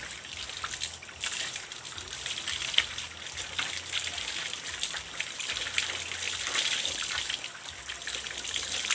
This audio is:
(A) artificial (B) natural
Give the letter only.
B